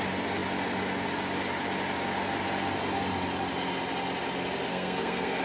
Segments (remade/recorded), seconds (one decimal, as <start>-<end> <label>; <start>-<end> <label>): 0.0-4.7 recorded; 4.7-5.4 remade